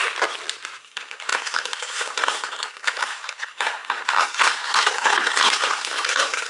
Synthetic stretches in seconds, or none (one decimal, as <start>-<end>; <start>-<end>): 0.8-6.5